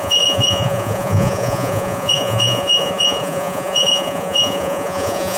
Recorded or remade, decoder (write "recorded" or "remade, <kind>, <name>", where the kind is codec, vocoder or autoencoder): remade, vocoder, Vocos